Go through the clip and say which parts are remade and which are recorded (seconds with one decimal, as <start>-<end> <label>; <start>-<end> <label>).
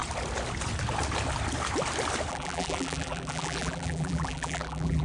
0.0-2.3 recorded; 2.3-5.0 remade